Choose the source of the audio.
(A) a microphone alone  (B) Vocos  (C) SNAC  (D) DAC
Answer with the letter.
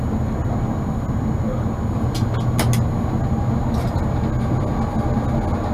A